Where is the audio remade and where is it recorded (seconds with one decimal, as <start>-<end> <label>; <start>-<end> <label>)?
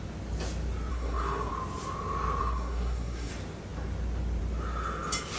0.0-0.9 recorded; 0.9-1.5 remade; 1.5-2.4 recorded; 2.4-3.3 remade; 3.3-5.4 recorded